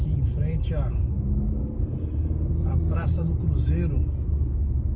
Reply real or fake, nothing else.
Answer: real